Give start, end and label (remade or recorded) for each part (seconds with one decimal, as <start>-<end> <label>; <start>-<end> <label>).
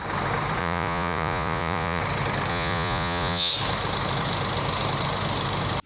0.0-0.6 recorded; 0.6-2.0 remade; 2.0-2.5 recorded; 2.5-3.5 remade; 3.5-5.9 recorded